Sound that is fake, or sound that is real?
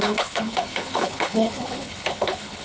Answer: fake